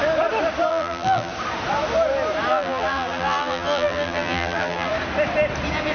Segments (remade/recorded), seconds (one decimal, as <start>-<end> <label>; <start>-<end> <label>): 0.0-0.7 recorded; 0.7-1.3 remade; 1.3-2.5 recorded; 2.5-4.9 remade; 4.9-5.9 recorded